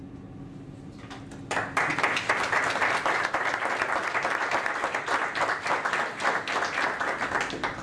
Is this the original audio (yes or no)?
yes